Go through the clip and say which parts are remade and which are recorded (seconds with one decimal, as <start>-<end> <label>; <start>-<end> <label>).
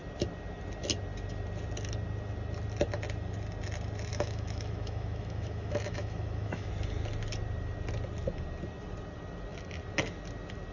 0.0-4.1 recorded; 4.1-6.7 remade; 6.7-10.7 recorded